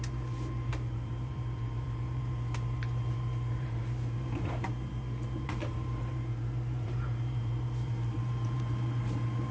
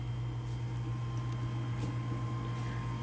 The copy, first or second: first